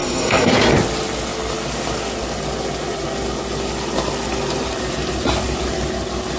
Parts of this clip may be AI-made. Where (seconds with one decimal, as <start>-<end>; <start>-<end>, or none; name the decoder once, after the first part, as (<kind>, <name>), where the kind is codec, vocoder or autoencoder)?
0.0-0.5 (codec, SNAC)